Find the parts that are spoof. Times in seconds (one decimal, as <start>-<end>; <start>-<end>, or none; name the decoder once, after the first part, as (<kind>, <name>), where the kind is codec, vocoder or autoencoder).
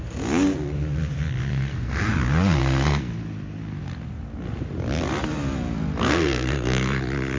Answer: 1.5-2.0 (codec, SNAC); 2.6-3.1; 6.0-7.0